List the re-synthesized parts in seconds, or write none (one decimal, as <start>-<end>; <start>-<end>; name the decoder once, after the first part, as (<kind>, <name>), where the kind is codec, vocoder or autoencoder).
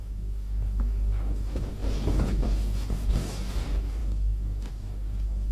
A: 0.0-5.5 (codec, DAC)